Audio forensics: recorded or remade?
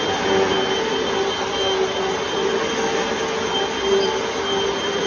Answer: recorded